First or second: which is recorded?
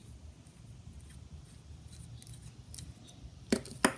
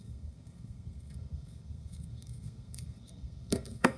first